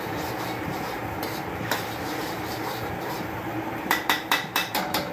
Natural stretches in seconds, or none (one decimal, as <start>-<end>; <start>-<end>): 1.0-1.6